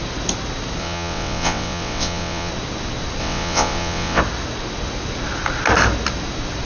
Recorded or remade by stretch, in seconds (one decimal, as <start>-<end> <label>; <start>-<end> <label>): 0.0-0.8 recorded; 0.8-2.5 remade; 2.5-3.2 recorded; 3.2-4.2 remade; 4.2-6.6 recorded